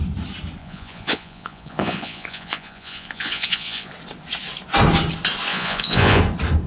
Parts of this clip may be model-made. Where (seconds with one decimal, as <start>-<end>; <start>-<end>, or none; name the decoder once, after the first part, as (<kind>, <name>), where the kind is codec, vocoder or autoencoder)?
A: 0.6-3.9 (vocoder, Vocos); 5.5-6.2